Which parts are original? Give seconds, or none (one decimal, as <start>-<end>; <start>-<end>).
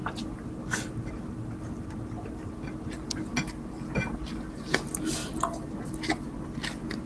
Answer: 2.5-7.1